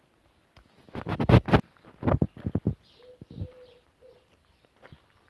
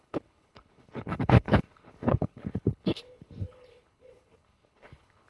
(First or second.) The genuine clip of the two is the first